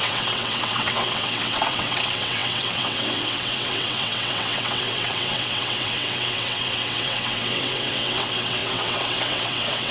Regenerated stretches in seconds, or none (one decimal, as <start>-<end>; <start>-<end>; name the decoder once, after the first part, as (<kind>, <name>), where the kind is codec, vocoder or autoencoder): 0.0-9.9 (vocoder, WaveNeXt)